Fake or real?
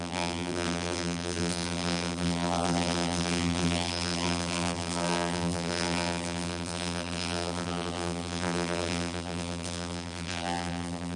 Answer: fake